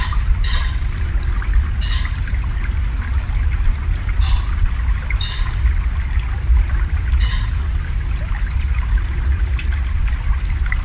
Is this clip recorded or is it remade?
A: recorded